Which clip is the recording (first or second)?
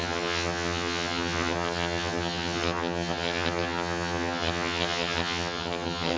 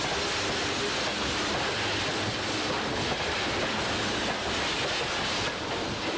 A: second